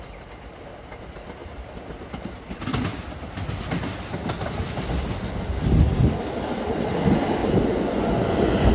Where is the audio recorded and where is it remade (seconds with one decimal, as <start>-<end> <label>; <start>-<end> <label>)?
0.0-7.4 recorded; 7.4-8.7 remade

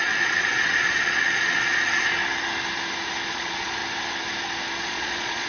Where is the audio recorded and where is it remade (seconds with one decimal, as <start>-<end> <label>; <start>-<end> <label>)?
0.0-2.2 remade; 2.2-3.3 recorded; 3.3-3.8 remade; 3.8-4.8 recorded; 4.8-5.5 remade

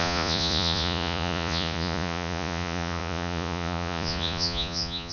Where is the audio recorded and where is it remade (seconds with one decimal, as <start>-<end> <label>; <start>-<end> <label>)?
0.0-5.1 remade

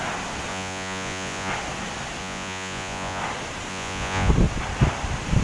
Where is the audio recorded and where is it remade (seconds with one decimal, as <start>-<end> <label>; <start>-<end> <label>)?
0.0-0.5 recorded; 0.5-1.5 remade; 1.5-2.2 recorded; 2.2-3.2 remade; 3.2-3.7 recorded; 3.7-4.3 remade; 4.3-5.4 recorded

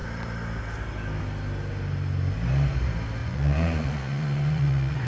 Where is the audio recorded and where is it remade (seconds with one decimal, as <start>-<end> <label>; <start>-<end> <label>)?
0.0-3.2 recorded; 3.2-5.1 remade

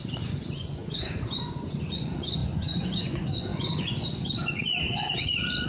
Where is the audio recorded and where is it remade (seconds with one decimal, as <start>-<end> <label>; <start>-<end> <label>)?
0.0-5.7 remade

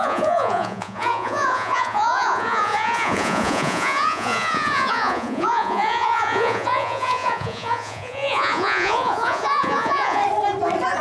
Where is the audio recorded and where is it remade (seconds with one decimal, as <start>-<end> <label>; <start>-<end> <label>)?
0.0-10.2 remade; 10.2-11.0 recorded

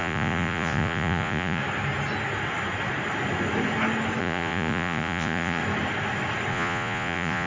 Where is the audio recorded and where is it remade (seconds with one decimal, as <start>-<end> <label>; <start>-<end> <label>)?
0.0-1.6 remade; 1.6-4.2 recorded; 4.2-5.6 remade; 5.6-6.5 recorded; 6.5-7.5 remade